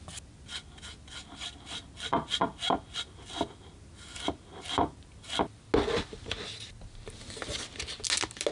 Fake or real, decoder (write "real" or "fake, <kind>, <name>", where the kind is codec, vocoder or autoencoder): real